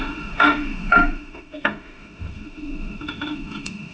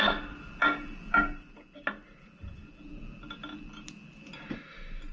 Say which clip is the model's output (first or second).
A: first